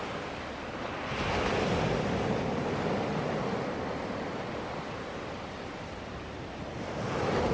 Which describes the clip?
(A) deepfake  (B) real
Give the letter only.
B